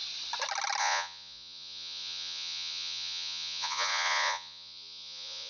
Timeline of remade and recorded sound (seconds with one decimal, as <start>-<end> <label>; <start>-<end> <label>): 0.0-0.8 recorded; 0.8-5.5 remade